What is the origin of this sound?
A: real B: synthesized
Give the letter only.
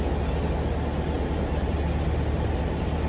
A